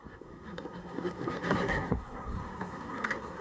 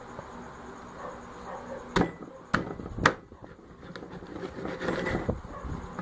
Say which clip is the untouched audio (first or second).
second